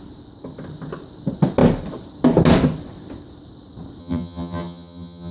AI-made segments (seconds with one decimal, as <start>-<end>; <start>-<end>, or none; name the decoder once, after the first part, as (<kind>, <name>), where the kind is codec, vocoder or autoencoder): 4.0-5.3 (vocoder, HiFi-GAN)